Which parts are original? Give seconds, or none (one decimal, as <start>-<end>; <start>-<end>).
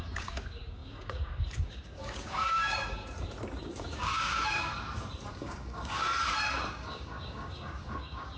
3.0-3.6; 4.7-5.3; 6.0-6.7